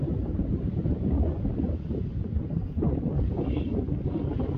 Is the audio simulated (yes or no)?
no